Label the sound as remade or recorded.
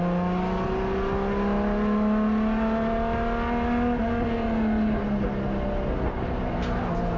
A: recorded